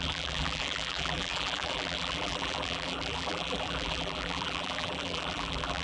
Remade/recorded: remade